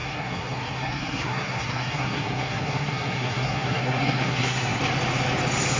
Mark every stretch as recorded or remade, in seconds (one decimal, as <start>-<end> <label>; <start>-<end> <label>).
0.0-4.8 remade; 4.8-5.8 recorded

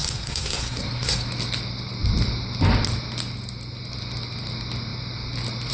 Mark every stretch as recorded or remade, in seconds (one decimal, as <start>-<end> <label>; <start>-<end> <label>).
0.0-1.3 remade; 1.3-5.7 recorded

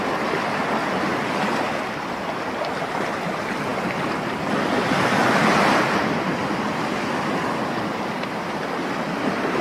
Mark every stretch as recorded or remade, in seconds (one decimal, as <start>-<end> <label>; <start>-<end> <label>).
0.0-9.6 recorded

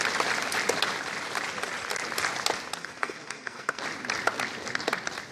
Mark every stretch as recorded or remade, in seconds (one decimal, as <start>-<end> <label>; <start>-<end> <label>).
0.0-2.8 recorded; 2.8-3.8 remade; 3.8-5.3 recorded

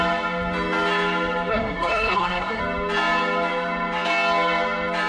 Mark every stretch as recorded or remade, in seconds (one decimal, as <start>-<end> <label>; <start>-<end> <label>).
0.0-1.5 recorded; 1.5-2.6 remade; 2.6-5.1 recorded

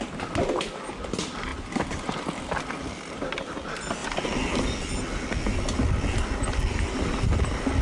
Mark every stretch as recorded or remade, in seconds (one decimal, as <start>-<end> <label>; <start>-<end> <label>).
0.0-7.8 recorded

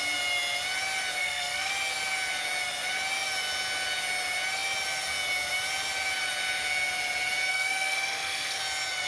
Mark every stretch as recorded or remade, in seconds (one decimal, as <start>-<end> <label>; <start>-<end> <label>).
0.0-1.2 recorded; 1.2-1.7 remade; 1.7-7.5 recorded; 7.5-8.6 remade; 8.6-9.1 recorded